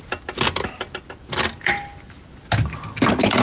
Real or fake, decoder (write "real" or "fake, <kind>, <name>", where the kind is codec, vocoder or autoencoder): real